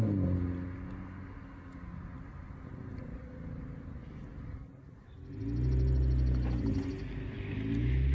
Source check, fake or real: real